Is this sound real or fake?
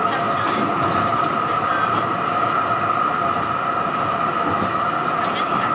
real